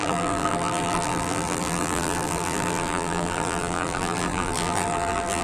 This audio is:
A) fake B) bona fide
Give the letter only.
A